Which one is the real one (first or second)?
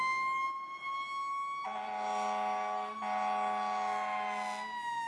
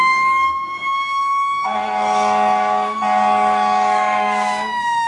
first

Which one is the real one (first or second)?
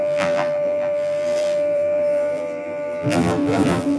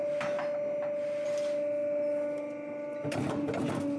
second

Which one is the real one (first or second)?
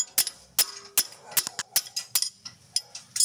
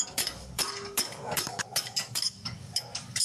first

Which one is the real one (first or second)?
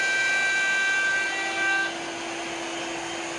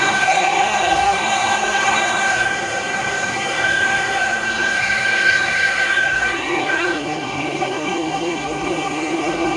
first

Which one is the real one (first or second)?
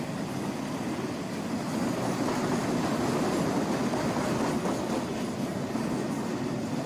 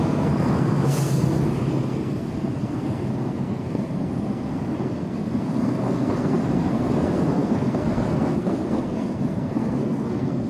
first